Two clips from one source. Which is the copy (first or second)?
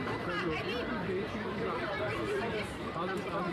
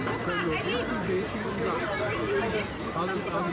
first